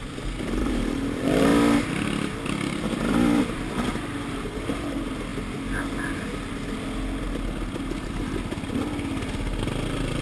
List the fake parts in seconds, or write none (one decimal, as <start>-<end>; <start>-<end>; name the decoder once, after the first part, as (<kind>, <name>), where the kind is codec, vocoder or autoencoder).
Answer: 0.6-1.5 (vocoder, BigVGAN v2); 3.4-5.3; 9.6-10.2

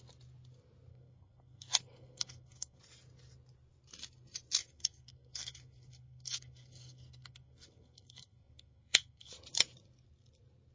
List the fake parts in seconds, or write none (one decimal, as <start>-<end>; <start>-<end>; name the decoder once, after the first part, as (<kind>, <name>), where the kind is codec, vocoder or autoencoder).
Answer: 0.9-2.8 (codec, SNAC); 4.6-9.3

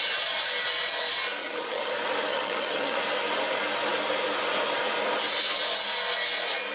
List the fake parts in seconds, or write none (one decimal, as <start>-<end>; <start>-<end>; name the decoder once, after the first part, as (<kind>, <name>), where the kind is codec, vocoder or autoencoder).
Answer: 1.4-1.9 (vocoder, HiFi-GAN); 2.3-3.0

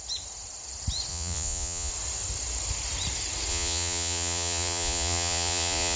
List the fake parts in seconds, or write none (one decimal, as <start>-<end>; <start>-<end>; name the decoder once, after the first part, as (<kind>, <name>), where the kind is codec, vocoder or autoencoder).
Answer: 1.1-1.9 (vocoder, Vocos); 3.5-6.0

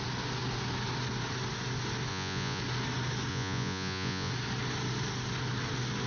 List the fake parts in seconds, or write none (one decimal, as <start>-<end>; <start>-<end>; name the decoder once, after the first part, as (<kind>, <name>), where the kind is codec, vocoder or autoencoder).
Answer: 2.1-2.6 (vocoder, Vocos); 3.3-4.3